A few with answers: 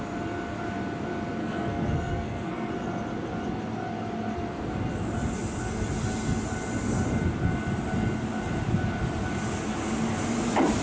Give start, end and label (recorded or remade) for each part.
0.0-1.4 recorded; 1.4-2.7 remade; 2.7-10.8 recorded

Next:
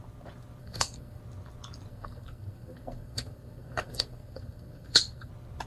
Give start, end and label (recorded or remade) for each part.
0.0-0.6 recorded; 0.6-1.2 remade; 1.2-1.9 recorded; 1.9-5.3 remade; 5.3-5.7 recorded

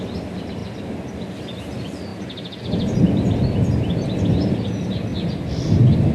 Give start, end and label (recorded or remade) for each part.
0.0-6.1 recorded

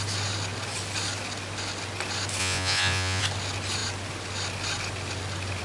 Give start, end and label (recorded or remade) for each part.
0.0-2.4 recorded; 2.4-3.2 remade; 3.2-5.6 recorded

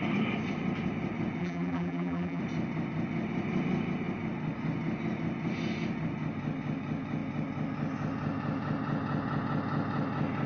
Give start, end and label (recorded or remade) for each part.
0.0-1.4 recorded; 1.4-2.4 remade; 2.4-10.5 recorded

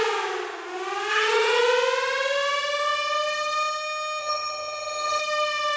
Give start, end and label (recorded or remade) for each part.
0.0-1.1 recorded; 1.1-1.6 remade; 1.6-4.2 recorded; 4.2-5.2 remade; 5.2-5.8 recorded